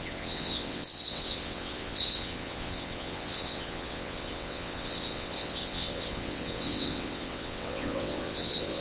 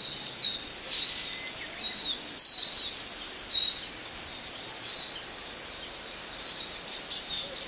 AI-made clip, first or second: first